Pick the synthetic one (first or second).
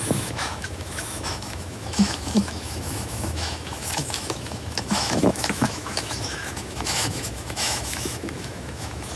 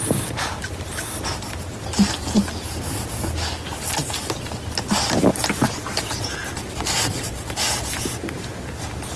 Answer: first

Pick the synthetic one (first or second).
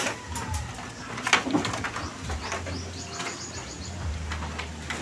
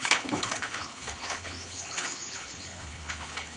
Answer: second